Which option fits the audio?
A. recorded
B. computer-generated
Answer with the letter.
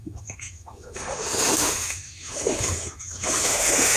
B